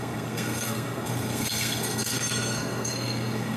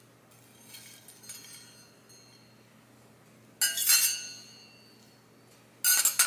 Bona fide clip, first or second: second